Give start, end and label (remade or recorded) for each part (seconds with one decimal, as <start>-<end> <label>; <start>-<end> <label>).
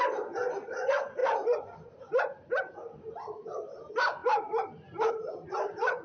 0.0-6.0 remade